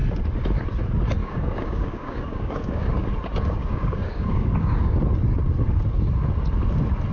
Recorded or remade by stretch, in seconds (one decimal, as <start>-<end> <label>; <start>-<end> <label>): 0.0-1.2 recorded; 1.2-3.1 remade; 3.1-3.6 recorded; 3.6-5.0 remade; 5.0-7.1 recorded